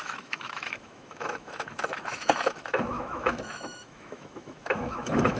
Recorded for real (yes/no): no